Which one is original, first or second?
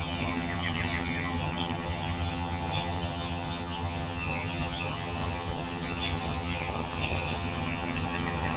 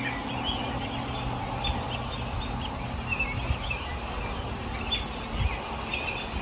second